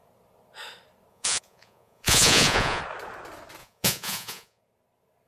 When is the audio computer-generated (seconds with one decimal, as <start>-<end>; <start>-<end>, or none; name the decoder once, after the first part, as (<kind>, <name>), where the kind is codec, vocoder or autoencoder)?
1.1-2.8 (vocoder, Vocos); 3.6-4.6